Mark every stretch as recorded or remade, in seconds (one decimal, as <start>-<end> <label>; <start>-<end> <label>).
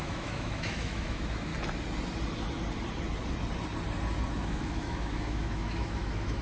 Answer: 0.0-1.5 remade; 1.5-4.3 recorded; 4.3-6.4 remade